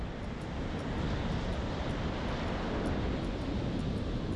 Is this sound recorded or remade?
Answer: recorded